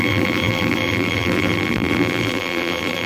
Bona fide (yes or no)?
no